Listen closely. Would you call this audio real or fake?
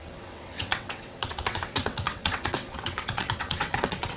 fake